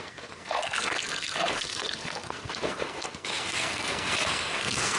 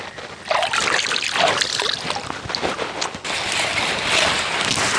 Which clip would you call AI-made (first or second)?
first